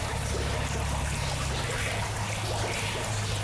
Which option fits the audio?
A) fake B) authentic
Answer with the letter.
B